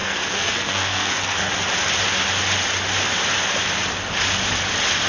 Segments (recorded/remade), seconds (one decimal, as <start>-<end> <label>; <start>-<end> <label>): 0.0-1.5 remade; 1.5-5.1 recorded